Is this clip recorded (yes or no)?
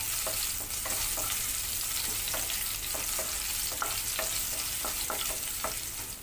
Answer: yes